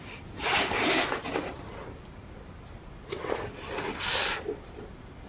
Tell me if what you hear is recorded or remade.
recorded